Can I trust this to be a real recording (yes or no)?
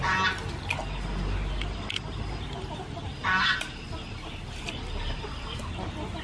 yes